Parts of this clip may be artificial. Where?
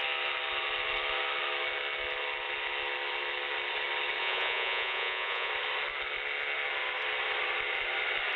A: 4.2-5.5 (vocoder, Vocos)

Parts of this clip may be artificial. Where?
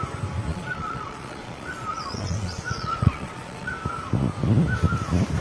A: 0.5-3.7 (vocoder, Vocos)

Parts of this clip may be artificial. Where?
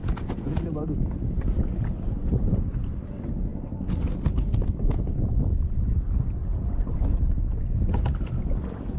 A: 0.0-1.0 (vocoder, Vocos)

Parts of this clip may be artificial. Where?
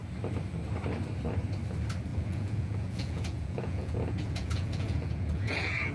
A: 2.1-5.9 (vocoder, Vocos)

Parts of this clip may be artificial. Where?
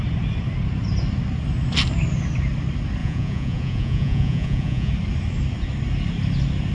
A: 3.0-4.9 (vocoder, Vocos)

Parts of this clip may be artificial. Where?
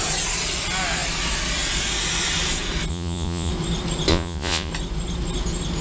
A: 2.9-3.5 (vocoder, Vocos); 4.1-4.7